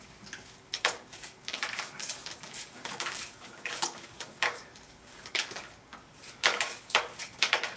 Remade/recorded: remade